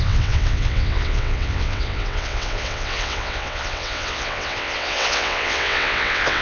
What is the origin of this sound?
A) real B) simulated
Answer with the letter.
B